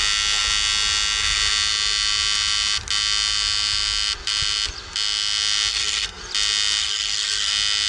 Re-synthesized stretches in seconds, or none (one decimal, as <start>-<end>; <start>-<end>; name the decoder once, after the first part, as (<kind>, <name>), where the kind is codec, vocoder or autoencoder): 5.7-6.2 (codec, SNAC); 6.8-7.5